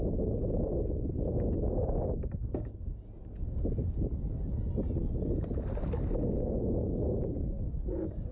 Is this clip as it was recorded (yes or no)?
yes